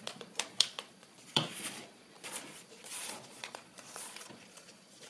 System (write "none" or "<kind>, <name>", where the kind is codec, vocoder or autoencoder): vocoder, Vocos